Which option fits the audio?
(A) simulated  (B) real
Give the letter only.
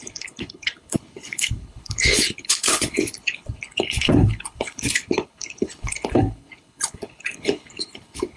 A